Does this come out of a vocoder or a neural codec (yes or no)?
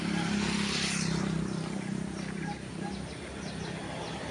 no